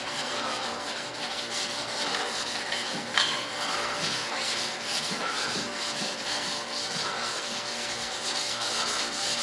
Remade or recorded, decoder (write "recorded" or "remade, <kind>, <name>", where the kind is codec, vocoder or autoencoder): remade, codec, SNAC